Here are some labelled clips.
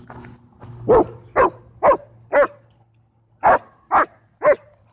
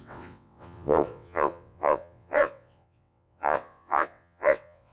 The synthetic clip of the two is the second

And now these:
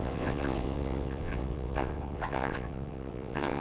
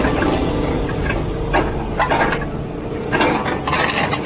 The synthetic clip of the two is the first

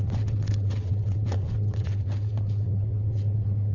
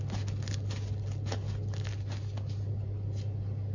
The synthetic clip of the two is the first